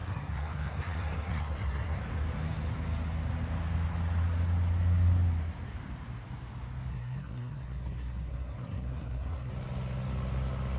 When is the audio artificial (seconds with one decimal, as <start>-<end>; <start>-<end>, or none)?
0.0-2.0; 6.9-9.5